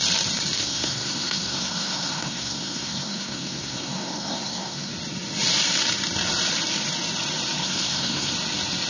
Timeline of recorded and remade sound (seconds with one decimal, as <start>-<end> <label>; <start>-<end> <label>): 0.0-0.6 recorded; 0.6-4.9 remade; 4.9-7.6 recorded; 7.6-8.3 remade; 8.3-8.9 recorded